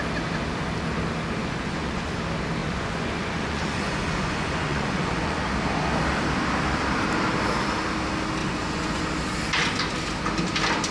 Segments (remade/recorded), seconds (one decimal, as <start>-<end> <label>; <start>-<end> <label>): 0.0-1.4 recorded; 1.4-2.2 remade; 2.2-2.6 recorded; 2.6-5.4 remade; 5.4-8.4 recorded; 8.4-9.0 remade; 9.0-10.9 recorded